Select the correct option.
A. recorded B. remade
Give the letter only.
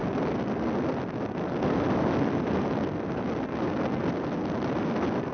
A